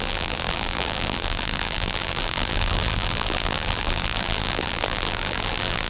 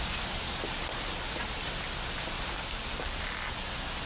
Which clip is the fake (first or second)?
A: first